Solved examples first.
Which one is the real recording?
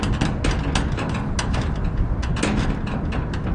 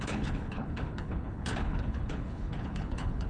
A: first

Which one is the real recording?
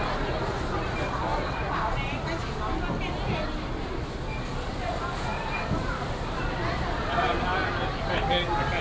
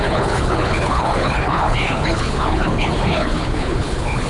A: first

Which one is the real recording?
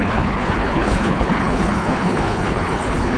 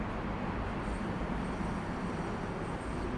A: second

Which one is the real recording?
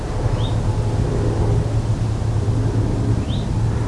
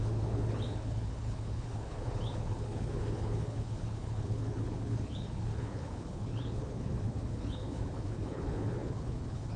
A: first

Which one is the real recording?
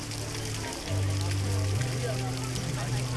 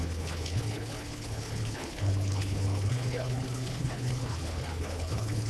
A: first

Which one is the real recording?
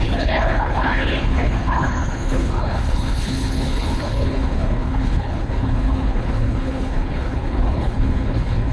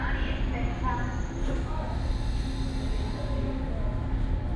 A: second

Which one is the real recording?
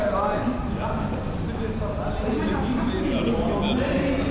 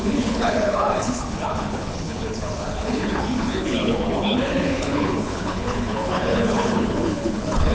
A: first